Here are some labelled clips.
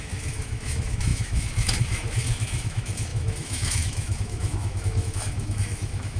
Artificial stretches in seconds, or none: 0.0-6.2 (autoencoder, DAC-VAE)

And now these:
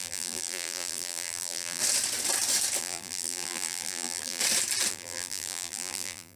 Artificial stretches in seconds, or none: 0.0-1.8 (vocoder, BigVGAN v2); 2.8-4.4; 4.9-6.4

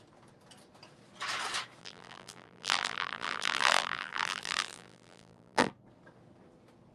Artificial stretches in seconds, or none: 1.8-5.7 (vocoder, BigVGAN v2)

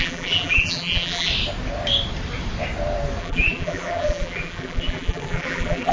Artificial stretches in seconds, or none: 0.0-1.3 (vocoder, BigVGAN v2); 3.2-5.9